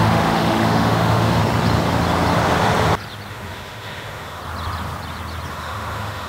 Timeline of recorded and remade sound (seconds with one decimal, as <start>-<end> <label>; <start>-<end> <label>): 0.0-1.4 remade; 1.4-3.3 recorded; 3.3-4.4 remade; 4.4-5.5 recorded; 5.5-6.3 remade